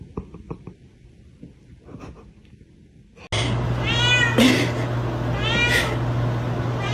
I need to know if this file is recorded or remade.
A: recorded